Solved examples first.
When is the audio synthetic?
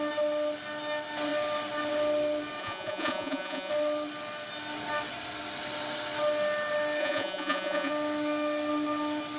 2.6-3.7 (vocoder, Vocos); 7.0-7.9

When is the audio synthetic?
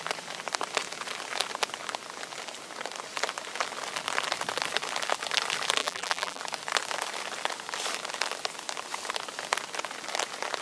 5.8-6.4 (vocoder, BigVGAN v2)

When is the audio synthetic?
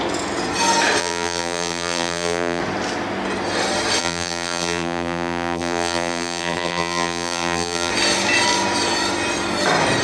1.0-2.6 (vocoder, BigVGAN v2); 4.0-7.9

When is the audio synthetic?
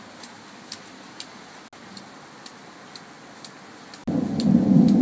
none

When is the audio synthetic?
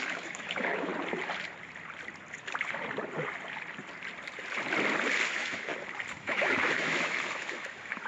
0.0-0.9 (autoencoder, DAC-VAE); 5.3-5.7; 6.2-8.1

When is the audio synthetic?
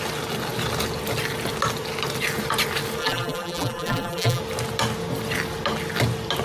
3.0-4.4 (vocoder, BigVGAN v2)